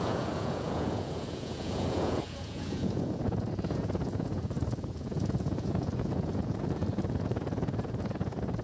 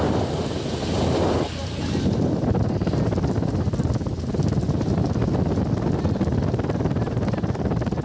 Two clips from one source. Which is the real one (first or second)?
second